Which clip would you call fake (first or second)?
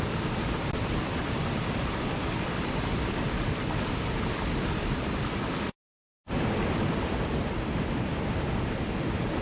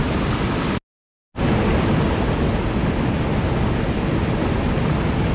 first